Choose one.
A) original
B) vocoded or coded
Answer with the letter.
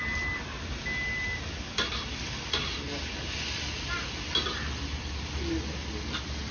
A